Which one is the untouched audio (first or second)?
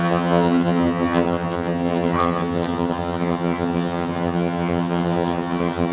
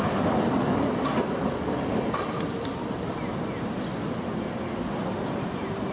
second